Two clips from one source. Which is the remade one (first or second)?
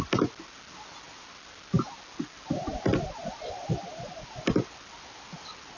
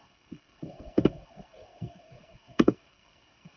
second